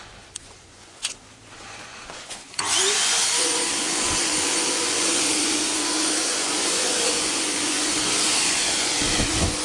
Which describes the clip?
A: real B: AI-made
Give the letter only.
B